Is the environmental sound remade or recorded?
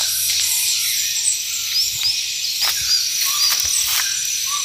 recorded